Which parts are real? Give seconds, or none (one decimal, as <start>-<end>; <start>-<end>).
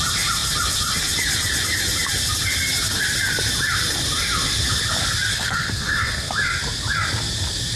0.0-5.3; 6.3-7.8